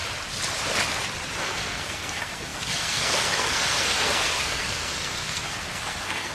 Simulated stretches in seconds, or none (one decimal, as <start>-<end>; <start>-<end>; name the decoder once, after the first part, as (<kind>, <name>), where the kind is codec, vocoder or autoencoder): 1.4-6.3 (codec, SNAC)